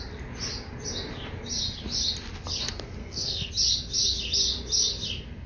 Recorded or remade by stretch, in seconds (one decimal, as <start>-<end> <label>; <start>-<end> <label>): 0.0-3.0 recorded; 3.0-3.5 remade; 3.5-5.5 recorded